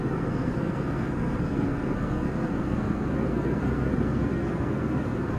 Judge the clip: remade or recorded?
remade